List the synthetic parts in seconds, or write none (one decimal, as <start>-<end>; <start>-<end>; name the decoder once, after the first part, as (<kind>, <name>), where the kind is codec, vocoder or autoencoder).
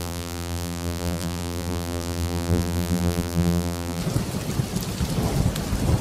0.0-4.0 (vocoder, BigVGAN v2)